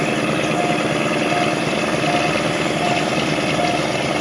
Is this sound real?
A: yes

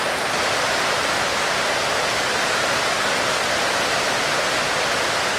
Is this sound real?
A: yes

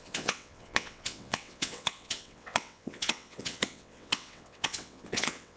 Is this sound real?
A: no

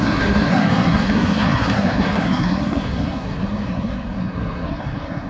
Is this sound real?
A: no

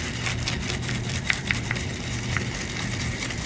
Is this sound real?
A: no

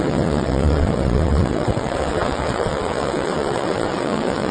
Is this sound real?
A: no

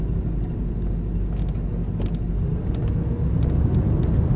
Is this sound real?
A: yes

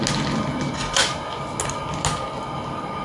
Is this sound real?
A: yes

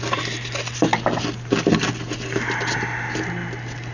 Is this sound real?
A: yes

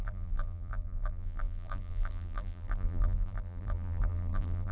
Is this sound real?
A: no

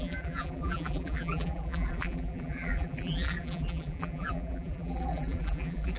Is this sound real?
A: no